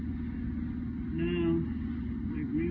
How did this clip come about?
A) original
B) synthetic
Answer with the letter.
A